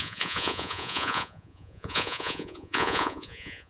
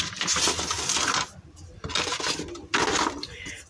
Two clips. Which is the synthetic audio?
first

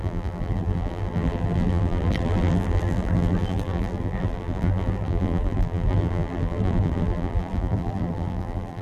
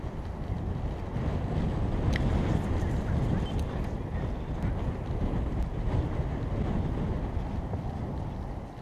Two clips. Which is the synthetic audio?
first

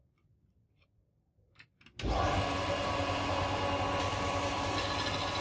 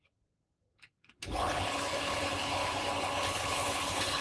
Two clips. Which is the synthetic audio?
second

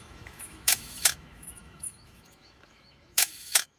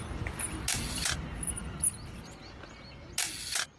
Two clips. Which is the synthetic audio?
first